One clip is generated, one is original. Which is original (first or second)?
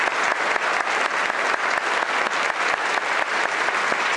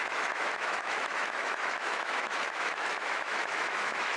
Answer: first